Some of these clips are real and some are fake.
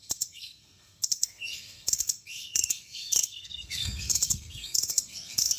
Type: fake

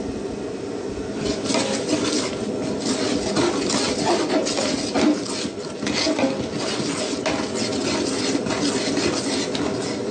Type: real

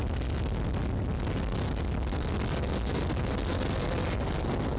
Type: real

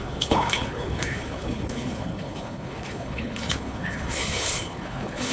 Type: fake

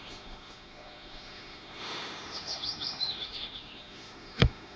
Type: fake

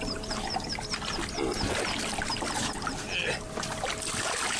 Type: real